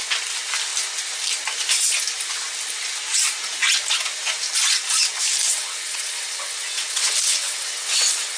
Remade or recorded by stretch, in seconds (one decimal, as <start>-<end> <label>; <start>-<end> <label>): 0.0-5.5 recorded; 5.5-8.4 remade